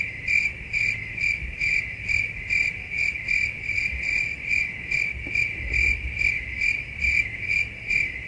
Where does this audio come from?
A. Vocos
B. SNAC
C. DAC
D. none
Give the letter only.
D